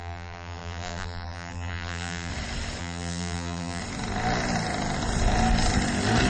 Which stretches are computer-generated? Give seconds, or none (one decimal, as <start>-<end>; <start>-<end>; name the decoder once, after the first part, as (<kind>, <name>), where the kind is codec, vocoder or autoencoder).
0.0-2.3 (vocoder, BigVGAN v2); 2.8-3.8